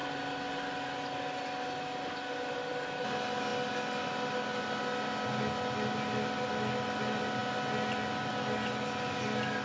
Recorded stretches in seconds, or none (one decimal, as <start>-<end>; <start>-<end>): 0.0-9.6